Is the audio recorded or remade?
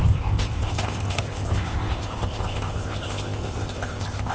remade